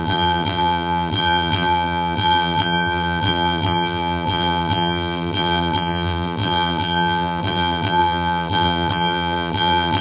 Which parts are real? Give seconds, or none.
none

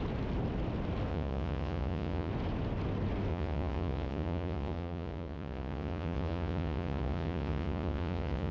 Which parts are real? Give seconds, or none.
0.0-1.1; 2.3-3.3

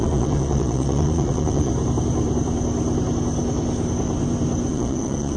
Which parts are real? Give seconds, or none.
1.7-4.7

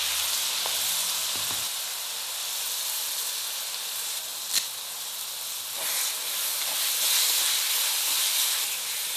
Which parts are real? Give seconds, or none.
0.0-9.2